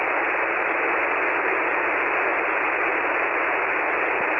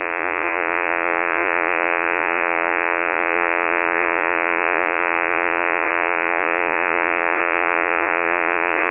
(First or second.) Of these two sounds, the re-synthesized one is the second